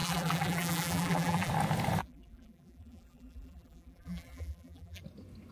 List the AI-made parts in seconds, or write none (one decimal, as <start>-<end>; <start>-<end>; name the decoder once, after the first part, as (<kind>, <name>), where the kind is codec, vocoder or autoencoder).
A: 0.0-1.5 (vocoder, BigVGAN v2); 2.0-5.0